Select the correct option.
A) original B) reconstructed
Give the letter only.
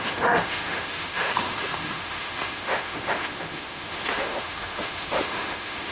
B